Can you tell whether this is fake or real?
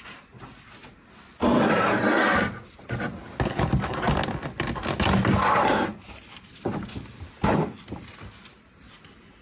real